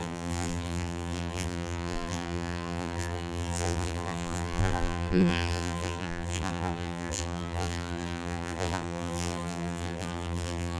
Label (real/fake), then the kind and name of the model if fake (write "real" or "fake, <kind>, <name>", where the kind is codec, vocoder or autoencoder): fake, vocoder, BigVGAN v2